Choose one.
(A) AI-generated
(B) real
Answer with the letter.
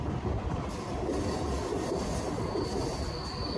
B